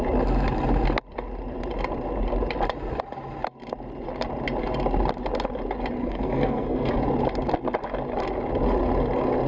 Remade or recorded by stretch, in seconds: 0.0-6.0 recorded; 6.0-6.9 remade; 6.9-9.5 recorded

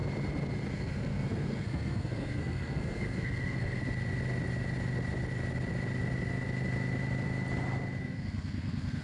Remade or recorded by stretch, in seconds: 0.0-0.7 recorded; 0.7-3.8 remade; 3.8-8.0 recorded; 8.0-9.0 remade

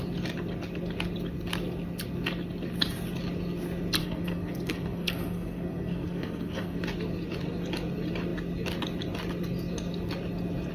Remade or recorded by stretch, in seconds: 0.0-4.0 recorded; 4.0-6.8 remade; 6.8-10.7 recorded

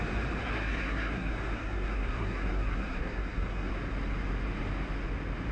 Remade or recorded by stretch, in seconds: 0.0-0.4 recorded; 0.4-3.7 remade; 3.7-5.5 recorded